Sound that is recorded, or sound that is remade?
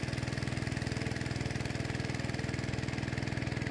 recorded